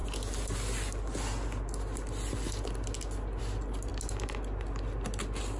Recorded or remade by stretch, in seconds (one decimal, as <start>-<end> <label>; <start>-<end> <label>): 0.0-5.6 recorded